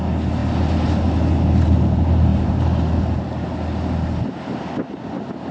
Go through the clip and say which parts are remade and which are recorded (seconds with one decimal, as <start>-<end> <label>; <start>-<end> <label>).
0.0-5.5 recorded